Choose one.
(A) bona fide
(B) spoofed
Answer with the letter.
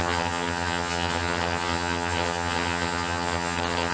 B